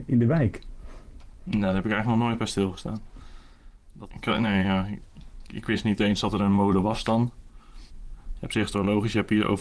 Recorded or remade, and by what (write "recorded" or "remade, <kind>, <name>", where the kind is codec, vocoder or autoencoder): remade, vocoder, Vocos